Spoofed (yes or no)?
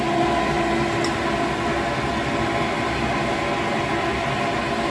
no